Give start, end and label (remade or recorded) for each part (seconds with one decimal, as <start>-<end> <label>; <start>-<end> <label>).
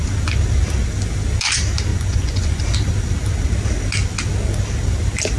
0.0-1.9 recorded; 1.9-2.6 remade; 2.6-5.4 recorded